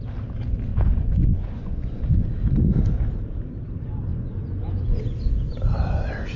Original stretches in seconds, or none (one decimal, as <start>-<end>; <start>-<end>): 0.0-0.7; 2.0-4.1; 5.0-6.4